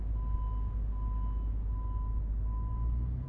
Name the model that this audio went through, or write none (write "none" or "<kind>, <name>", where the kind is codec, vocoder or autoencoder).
none